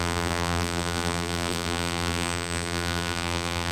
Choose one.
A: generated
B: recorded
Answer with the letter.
A